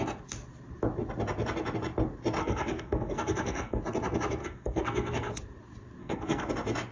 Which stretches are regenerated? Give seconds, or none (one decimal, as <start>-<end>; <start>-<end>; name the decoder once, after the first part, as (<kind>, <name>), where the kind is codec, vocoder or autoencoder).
2.4-3.8 (codec, SNAC); 4.4-5.3; 6.0-6.5